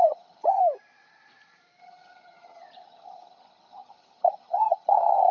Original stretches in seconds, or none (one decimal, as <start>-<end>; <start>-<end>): 0.6-1.8